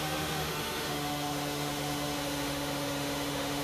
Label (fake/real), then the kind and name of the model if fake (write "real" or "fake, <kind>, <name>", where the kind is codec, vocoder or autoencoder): fake, autoencoder, DAC-VAE